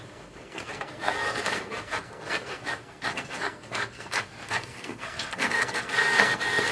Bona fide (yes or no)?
no